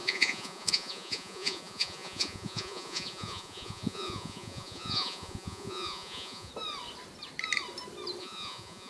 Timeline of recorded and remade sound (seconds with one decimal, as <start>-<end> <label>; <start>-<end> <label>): 0.0-6.5 remade; 6.5-8.2 recorded; 8.2-8.9 remade